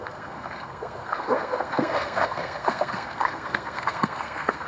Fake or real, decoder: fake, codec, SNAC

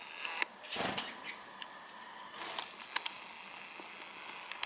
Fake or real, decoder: real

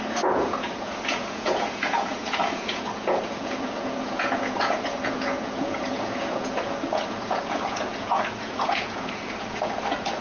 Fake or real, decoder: fake, vocoder, Vocos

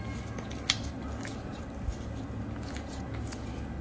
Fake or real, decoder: real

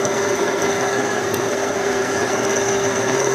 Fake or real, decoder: fake, codec, SNAC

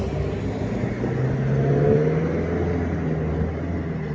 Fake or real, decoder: real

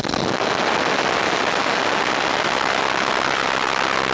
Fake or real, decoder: real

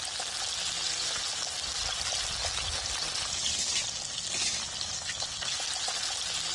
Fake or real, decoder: real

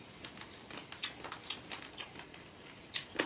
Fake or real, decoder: real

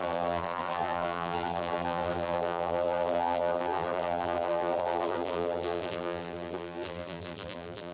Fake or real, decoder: fake, vocoder, BigVGAN v2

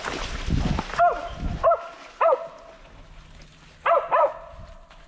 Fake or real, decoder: real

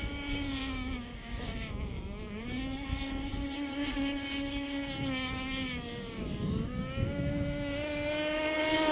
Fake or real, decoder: fake, codec, DAC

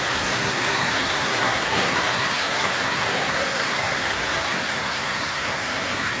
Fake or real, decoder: fake, codec, SNAC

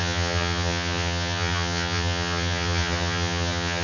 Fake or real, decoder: fake, vocoder, HiFi-GAN